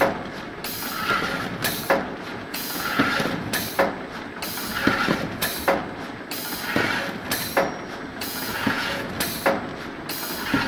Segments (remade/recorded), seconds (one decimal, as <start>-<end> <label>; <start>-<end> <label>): 0.0-2.3 recorded; 2.3-3.0 remade; 3.0-8.1 recorded; 8.1-9.1 remade; 9.1-10.7 recorded